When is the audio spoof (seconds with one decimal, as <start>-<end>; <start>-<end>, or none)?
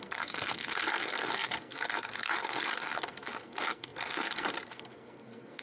0.0-5.6